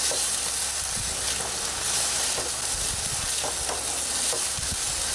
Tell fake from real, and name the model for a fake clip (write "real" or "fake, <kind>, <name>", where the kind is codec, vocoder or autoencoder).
real